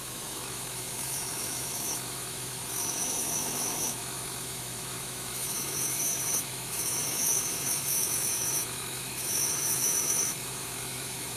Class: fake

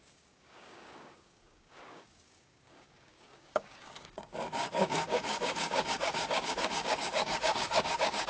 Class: fake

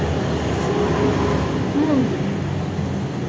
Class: real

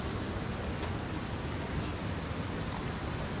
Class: real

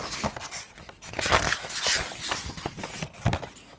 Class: real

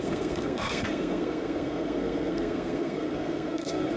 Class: fake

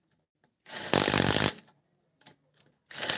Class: real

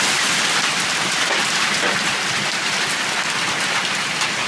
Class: real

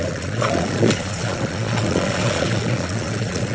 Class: fake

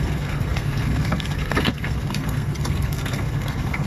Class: fake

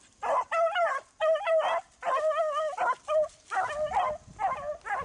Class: real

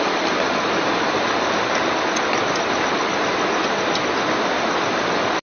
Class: real